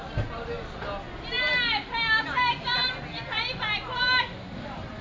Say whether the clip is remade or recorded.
recorded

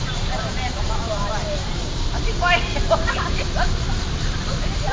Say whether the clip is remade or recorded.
remade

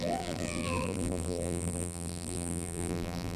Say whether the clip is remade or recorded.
remade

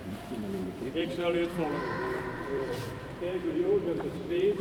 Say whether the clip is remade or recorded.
remade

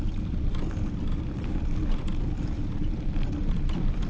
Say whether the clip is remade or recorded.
recorded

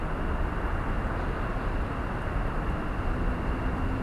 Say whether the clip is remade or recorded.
recorded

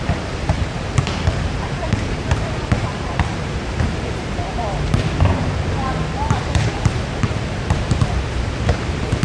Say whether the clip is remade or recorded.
remade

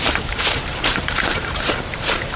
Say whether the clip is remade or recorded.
remade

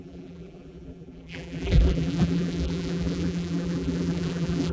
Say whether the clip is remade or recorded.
remade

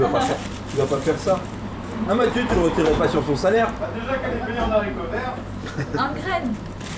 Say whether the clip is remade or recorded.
remade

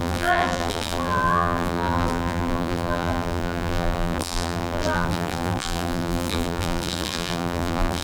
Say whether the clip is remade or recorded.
remade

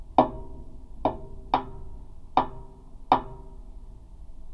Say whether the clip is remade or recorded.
recorded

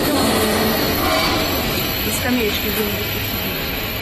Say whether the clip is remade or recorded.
recorded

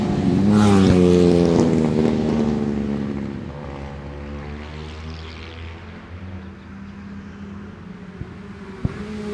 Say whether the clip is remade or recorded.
recorded